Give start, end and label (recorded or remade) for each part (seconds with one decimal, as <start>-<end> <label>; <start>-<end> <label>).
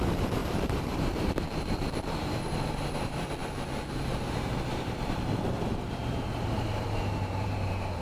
0.0-8.0 remade